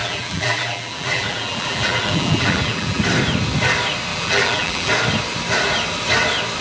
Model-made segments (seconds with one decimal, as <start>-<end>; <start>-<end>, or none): 0.0-3.0; 4.1-4.9